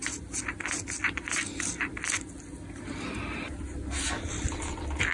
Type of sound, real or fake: real